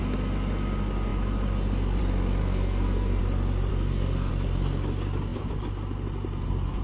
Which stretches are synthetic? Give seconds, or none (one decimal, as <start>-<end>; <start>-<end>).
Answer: 2.4-3.2; 3.7-4.3